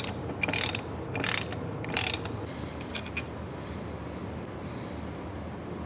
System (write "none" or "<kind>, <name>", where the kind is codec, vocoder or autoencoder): none